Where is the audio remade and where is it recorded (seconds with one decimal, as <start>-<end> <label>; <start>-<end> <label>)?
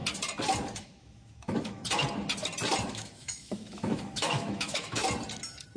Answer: 0.0-0.8 recorded; 0.8-1.8 remade; 1.8-2.9 recorded; 2.9-5.0 remade; 5.0-5.8 recorded